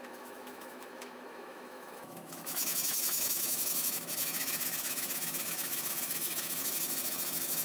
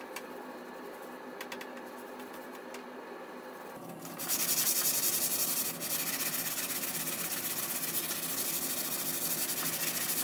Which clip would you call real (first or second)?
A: second